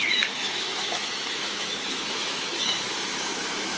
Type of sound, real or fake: fake